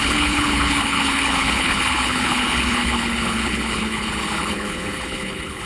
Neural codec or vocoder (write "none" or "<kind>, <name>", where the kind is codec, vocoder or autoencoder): codec, HILCodec